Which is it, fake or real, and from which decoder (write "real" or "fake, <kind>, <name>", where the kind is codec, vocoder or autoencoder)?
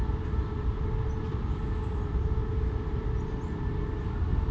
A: real